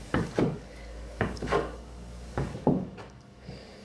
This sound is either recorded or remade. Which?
remade